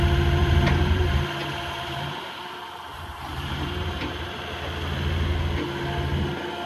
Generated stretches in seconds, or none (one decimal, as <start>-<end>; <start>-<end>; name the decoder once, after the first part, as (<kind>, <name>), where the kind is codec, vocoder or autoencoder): 0.4-4.4 (vocoder, BigVGAN v2)